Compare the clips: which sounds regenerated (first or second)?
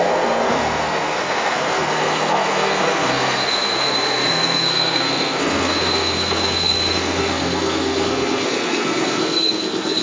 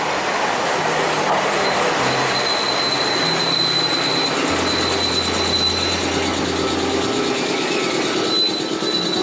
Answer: first